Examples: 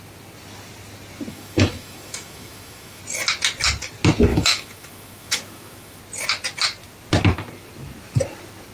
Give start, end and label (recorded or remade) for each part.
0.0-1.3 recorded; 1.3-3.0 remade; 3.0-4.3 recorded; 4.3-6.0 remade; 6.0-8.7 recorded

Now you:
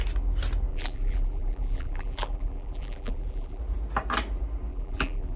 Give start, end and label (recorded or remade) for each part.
0.0-0.7 recorded; 0.7-3.6 remade; 3.6-4.7 recorded; 4.7-5.4 remade